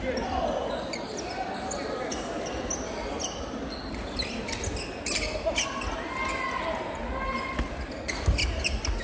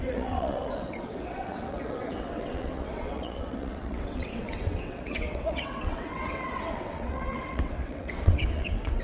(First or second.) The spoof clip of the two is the second